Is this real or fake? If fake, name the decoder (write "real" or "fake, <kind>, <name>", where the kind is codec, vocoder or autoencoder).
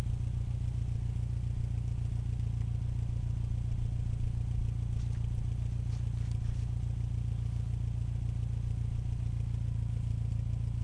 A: real